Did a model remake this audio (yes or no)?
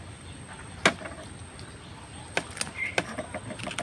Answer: no